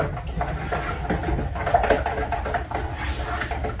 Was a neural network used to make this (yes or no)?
no